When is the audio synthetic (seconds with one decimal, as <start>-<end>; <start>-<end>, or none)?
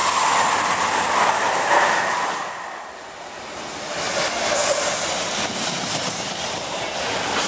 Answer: none